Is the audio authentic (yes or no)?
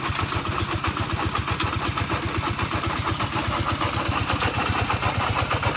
yes